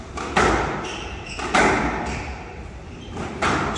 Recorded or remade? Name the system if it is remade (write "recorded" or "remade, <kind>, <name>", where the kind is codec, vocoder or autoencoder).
recorded